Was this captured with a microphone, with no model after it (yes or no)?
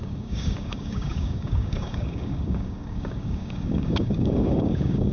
no